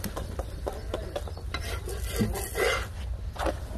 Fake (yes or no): no